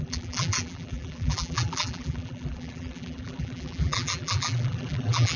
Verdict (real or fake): fake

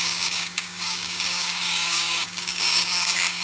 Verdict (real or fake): fake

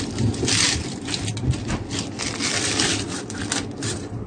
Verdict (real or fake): real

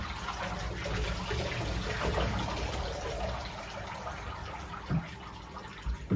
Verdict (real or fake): real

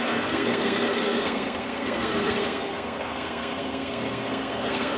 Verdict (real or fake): fake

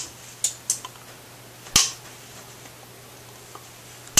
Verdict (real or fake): real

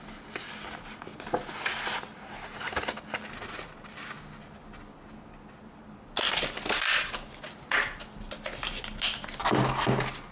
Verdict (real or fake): real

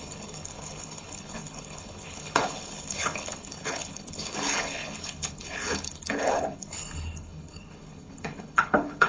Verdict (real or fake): fake